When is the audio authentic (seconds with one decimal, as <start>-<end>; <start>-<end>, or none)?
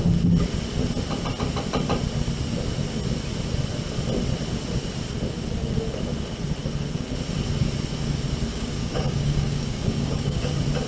0.0-8.5; 10.4-10.9